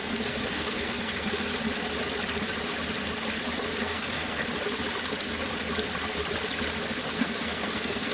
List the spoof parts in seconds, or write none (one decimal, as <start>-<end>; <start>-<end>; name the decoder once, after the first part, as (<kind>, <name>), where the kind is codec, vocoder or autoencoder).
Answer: 0.0-1.5 (codec, SNAC); 3.8-4.4; 7.1-8.1